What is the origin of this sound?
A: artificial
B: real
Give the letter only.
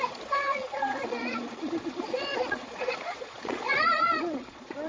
A